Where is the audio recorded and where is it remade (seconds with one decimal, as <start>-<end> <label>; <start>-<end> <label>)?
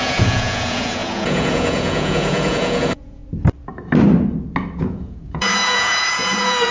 0.0-3.2 remade; 3.2-4.8 recorded; 4.8-6.7 remade